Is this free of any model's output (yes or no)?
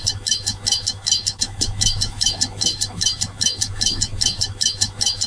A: no